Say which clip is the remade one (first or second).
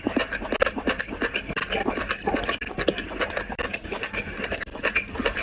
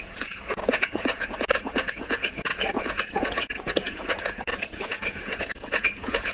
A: second